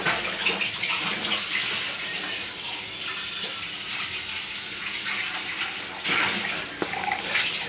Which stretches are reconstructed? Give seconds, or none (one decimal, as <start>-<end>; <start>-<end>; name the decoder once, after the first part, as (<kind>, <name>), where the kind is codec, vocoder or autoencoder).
none